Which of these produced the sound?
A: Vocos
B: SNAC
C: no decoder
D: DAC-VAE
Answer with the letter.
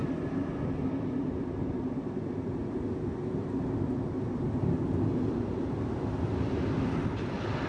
C